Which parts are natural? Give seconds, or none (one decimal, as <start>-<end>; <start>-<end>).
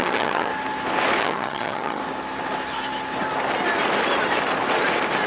0.5-1.2; 2.0-5.3